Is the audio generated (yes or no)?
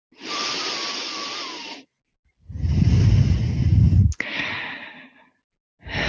no